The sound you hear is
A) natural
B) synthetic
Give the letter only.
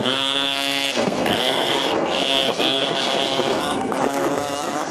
B